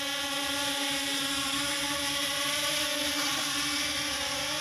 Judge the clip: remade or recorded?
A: recorded